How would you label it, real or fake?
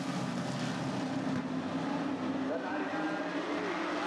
real